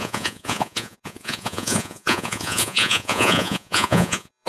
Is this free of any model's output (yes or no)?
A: no